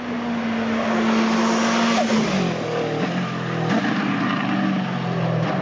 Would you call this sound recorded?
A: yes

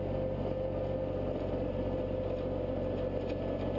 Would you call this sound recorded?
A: yes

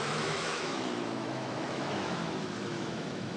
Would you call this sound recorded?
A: no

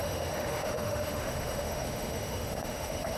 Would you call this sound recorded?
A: no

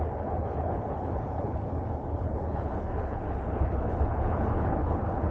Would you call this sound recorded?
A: no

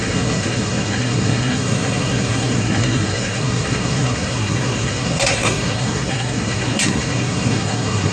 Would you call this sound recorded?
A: no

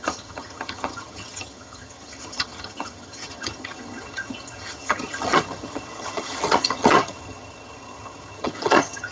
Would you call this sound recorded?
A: no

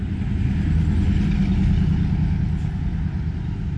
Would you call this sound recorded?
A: yes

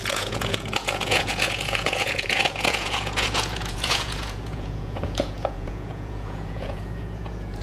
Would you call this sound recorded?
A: no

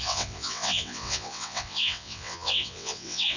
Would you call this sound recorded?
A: no